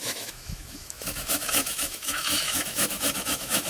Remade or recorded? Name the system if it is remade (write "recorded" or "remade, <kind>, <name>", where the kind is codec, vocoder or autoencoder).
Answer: remade, autoencoder, DAC-VAE